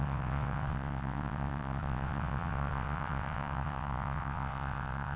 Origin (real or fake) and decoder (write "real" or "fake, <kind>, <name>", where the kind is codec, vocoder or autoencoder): fake, vocoder, WaveNeXt